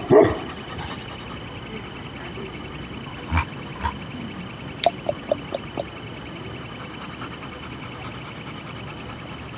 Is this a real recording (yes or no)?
no